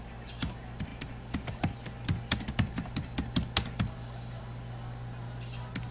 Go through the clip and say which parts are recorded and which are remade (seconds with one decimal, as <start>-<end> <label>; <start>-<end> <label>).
0.0-5.9 recorded